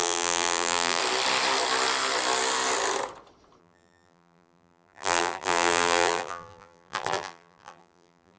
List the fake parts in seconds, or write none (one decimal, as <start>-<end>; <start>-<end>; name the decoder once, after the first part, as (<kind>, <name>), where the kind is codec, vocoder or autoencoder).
0.0-1.0 (vocoder, BigVGAN v2); 3.6-8.4